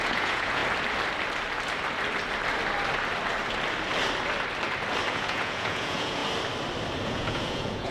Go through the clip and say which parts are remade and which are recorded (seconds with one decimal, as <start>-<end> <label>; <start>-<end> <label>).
0.0-0.6 remade; 0.6-5.1 recorded; 5.1-6.2 remade; 6.2-7.0 recorded; 7.0-7.9 remade